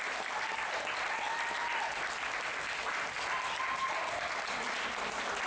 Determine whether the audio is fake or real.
real